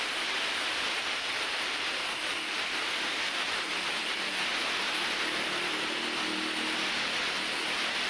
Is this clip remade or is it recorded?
recorded